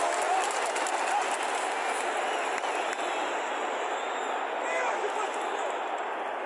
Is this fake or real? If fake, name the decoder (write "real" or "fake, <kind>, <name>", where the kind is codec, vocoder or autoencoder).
real